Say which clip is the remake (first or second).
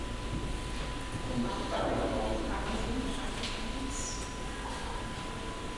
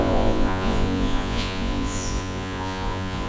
second